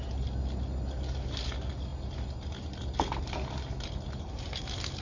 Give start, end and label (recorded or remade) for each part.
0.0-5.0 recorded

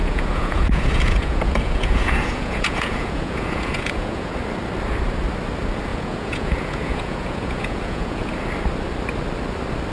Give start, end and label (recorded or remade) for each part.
0.0-4.3 remade; 4.3-5.9 recorded; 5.9-8.3 remade; 8.3-9.9 recorded

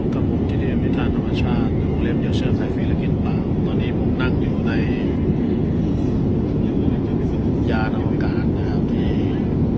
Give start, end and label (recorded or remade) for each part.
0.0-9.8 recorded

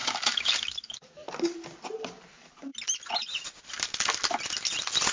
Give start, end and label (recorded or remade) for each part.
0.0-1.3 remade; 1.3-5.1 recorded

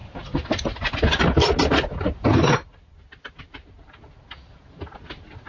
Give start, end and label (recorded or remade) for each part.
0.0-5.5 recorded

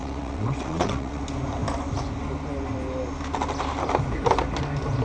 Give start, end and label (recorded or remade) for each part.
0.0-1.2 remade; 1.2-5.0 recorded